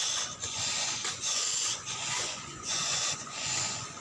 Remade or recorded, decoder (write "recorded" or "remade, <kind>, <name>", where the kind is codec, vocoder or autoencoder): remade, vocoder, Vocos